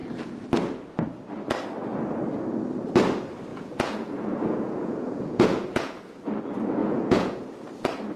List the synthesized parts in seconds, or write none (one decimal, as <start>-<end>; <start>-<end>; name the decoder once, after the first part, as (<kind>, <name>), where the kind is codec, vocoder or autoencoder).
3.5-6.1 (vocoder, Vocos); 6.8-7.4